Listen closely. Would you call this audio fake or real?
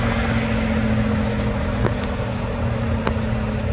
real